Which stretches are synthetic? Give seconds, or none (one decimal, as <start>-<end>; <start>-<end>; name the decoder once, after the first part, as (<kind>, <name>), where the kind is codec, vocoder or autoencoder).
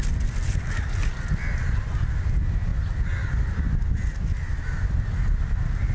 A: none